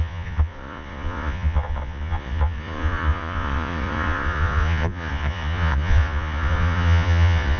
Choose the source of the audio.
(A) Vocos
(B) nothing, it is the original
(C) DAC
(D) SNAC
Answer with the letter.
A